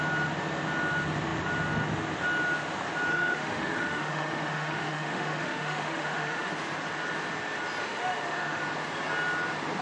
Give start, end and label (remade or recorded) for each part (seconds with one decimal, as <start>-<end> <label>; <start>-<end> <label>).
0.0-3.1 recorded; 3.1-6.5 remade; 6.5-7.8 recorded; 7.8-8.6 remade; 8.6-9.8 recorded